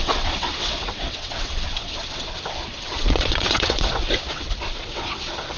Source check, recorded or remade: remade